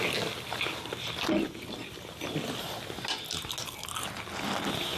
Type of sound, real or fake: real